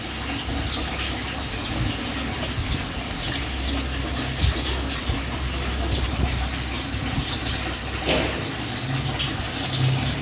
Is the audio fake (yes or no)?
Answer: no